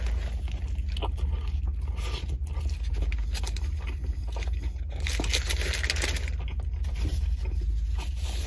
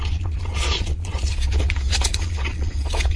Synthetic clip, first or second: second